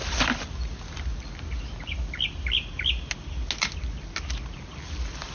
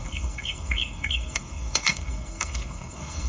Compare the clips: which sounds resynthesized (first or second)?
second